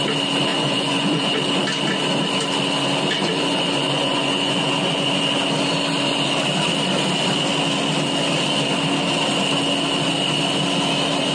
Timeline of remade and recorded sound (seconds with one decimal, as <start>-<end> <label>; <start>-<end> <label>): 0.0-0.5 recorded; 0.5-1.4 remade; 1.4-3.2 recorded; 3.2-5.1 remade; 5.1-11.3 recorded